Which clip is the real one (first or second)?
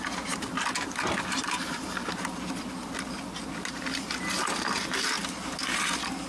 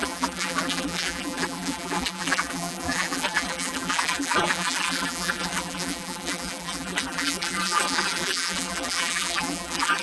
first